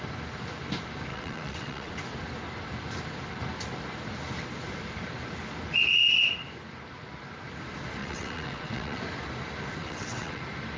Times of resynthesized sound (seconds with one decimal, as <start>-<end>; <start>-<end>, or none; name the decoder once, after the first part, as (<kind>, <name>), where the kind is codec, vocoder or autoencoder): 1.1-1.9 (vocoder, WaveNeXt); 8.0-9.0; 9.8-10.4